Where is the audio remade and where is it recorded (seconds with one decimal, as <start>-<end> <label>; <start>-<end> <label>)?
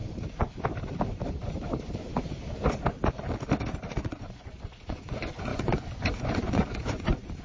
0.0-3.9 recorded; 3.9-7.4 remade